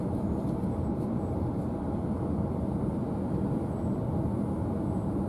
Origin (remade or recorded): recorded